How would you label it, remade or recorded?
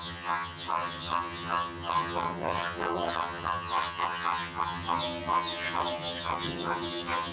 remade